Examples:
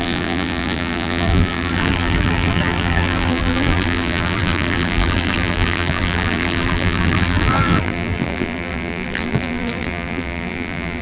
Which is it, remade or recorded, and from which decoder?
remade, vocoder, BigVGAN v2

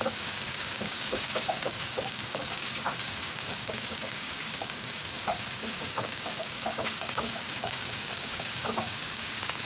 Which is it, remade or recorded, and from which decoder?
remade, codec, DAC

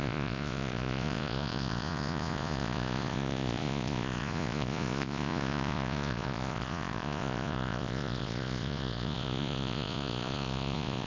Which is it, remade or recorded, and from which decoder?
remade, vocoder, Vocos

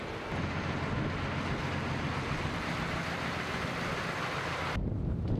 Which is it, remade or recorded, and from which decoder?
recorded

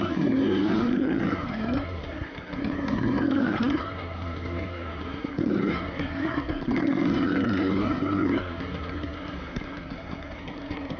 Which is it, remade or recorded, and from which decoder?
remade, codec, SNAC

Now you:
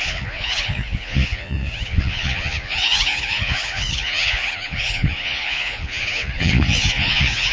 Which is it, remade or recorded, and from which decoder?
remade, vocoder, Vocos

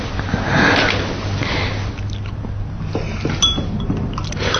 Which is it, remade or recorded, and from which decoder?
recorded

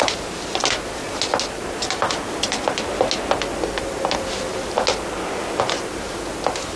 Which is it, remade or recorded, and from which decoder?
recorded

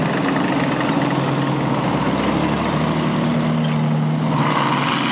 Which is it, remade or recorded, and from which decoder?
recorded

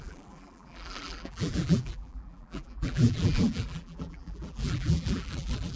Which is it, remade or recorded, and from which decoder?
remade, vocoder, BigVGAN v2